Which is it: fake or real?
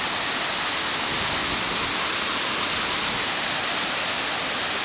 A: real